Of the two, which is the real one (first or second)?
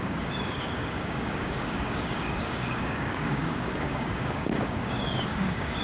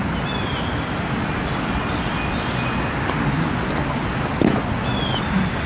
second